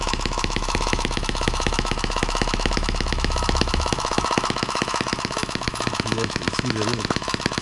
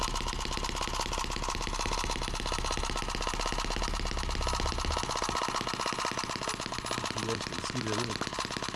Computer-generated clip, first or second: first